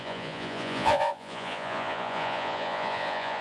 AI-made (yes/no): yes